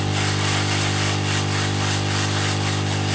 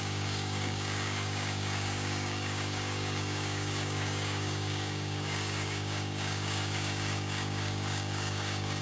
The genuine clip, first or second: first